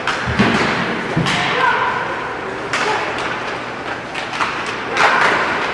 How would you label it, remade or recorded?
recorded